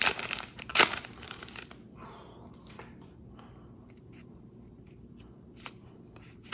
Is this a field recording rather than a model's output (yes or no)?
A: no